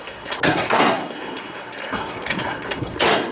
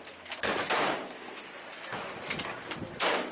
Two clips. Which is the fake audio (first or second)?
first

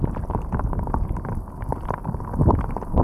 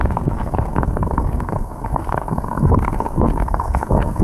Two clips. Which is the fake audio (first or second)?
second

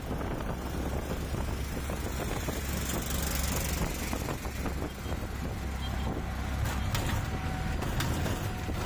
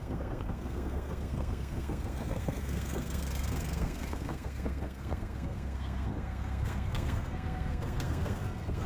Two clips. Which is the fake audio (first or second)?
second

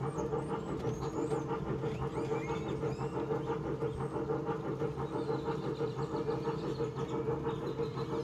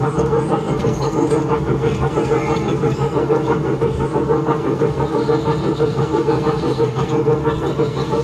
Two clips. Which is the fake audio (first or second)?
second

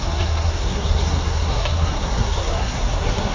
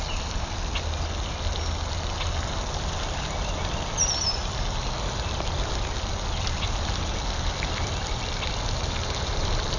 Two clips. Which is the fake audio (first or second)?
first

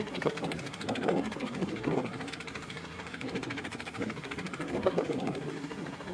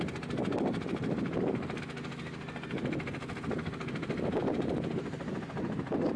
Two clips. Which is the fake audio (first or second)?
first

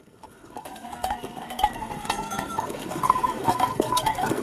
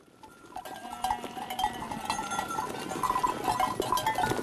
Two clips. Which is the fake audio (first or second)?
first